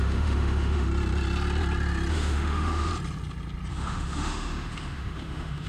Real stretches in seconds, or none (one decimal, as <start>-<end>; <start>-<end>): 0.9-2.1; 2.9-3.7